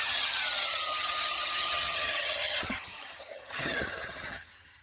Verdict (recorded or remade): remade